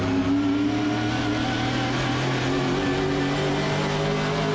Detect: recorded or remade recorded